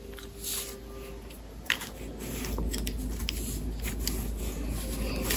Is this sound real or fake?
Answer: real